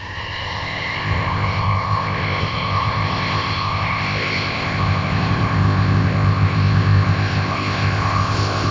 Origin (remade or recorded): remade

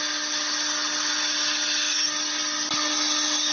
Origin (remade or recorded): recorded